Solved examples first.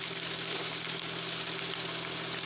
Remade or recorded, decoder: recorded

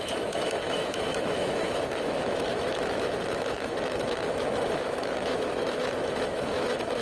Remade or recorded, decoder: remade, autoencoder, DAC-VAE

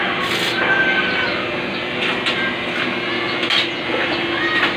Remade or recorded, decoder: recorded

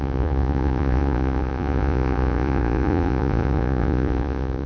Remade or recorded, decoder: remade, vocoder, Vocos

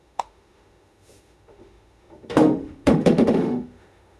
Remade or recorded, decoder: remade, autoencoder, DAC-VAE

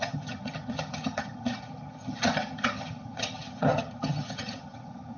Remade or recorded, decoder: remade, vocoder, HiFi-GAN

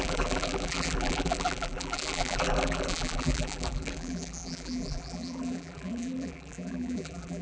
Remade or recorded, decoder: remade, vocoder, BigVGAN v2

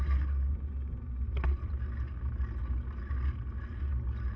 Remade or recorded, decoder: recorded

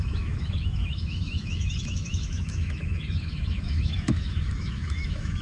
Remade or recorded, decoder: remade, autoencoder, DAC-VAE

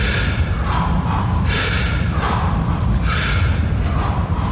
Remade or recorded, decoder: remade, vocoder, BigVGAN v2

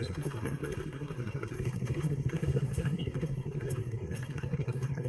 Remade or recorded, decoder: remade, codec, SNAC